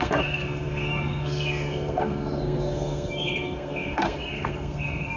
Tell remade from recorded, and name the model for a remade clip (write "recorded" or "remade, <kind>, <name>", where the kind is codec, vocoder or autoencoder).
remade, codec, SNAC